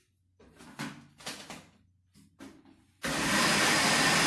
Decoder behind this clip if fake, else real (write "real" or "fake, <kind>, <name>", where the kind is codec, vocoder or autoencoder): real